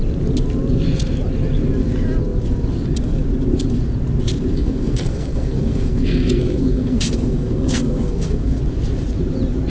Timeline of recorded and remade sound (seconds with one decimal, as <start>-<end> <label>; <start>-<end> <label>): 0.0-4.5 recorded; 4.5-8.6 remade; 8.6-9.7 recorded